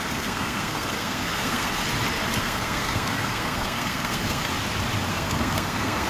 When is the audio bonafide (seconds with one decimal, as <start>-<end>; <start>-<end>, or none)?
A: 1.8-2.4; 4.5-5.1